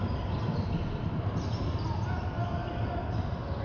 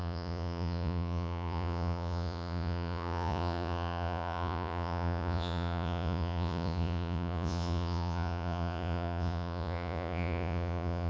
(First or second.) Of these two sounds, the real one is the first